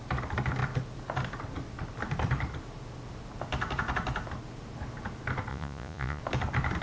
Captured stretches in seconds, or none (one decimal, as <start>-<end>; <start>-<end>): 0.0-5.5; 6.2-6.8